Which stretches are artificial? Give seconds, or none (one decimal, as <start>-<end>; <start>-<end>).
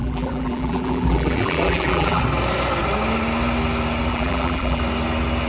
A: 0.0-2.2; 4.1-4.8